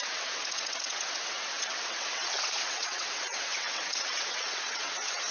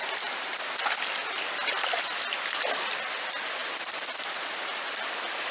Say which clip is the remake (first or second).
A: first